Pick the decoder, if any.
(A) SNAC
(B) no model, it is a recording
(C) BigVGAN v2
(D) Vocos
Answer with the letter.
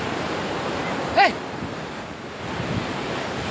B